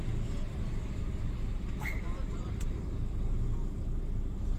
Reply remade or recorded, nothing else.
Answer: recorded